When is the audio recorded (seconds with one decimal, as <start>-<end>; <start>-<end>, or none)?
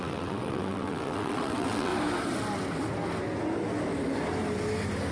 1.9-5.1